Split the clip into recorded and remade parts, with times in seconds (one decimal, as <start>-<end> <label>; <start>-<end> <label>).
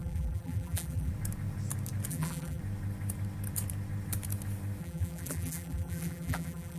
0.0-1.1 remade; 1.1-2.1 recorded; 2.1-2.6 remade; 2.6-4.8 recorded; 4.8-6.8 remade